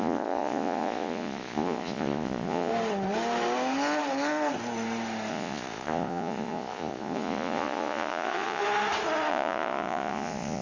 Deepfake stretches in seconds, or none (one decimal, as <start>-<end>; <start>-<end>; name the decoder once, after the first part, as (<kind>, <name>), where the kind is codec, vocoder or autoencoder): 0.0-2.7 (vocoder, Vocos); 5.3-8.6; 9.3-10.6